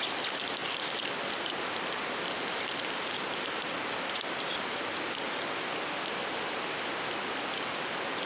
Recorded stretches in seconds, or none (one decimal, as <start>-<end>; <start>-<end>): 0.0-8.3